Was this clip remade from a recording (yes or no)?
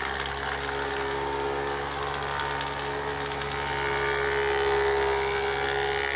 no